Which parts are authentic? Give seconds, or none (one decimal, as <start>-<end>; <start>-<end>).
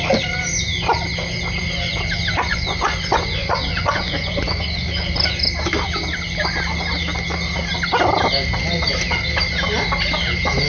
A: 0.0-2.5; 4.6-10.7